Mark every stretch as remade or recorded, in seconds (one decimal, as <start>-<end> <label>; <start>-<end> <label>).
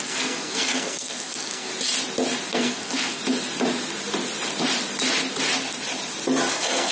0.0-1.7 remade; 1.7-2.5 recorded; 2.5-3.2 remade; 3.2-6.5 recorded; 6.5-6.9 remade